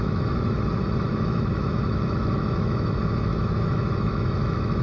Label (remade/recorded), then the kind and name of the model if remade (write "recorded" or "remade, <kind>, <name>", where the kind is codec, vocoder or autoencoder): remade, autoencoder, DAC-VAE